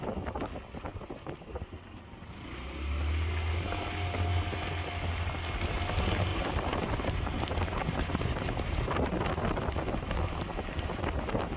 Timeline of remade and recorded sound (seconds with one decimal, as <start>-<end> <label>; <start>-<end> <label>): 0.0-0.9 recorded; 0.9-2.3 remade; 2.3-6.3 recorded; 6.3-9.3 remade; 9.3-11.6 recorded